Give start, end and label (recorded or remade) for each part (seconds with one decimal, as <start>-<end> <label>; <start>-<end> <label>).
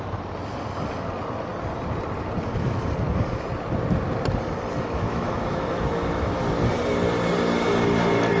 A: 0.0-4.8 recorded; 4.8-6.4 remade; 6.4-8.4 recorded